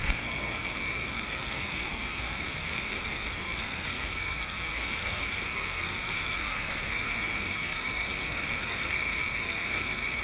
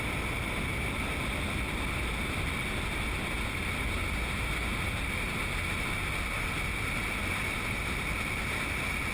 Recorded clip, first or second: second